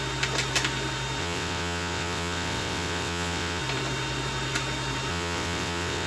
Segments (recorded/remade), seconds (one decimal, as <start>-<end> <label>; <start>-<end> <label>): 0.0-1.2 recorded; 1.2-3.6 remade; 3.6-5.1 recorded; 5.1-6.1 remade